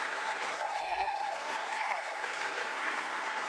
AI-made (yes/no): yes